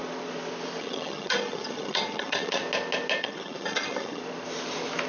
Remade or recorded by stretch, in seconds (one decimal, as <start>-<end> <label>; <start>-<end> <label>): 0.0-0.8 recorded; 0.8-2.6 remade; 2.6-3.2 recorded; 3.2-4.2 remade; 4.2-5.1 recorded